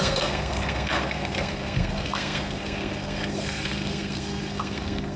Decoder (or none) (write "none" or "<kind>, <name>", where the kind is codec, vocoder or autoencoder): codec, SNAC